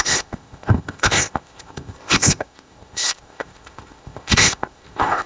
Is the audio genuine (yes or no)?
no